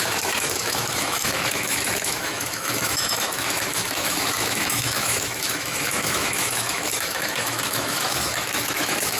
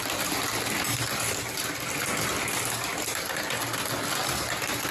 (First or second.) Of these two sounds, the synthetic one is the first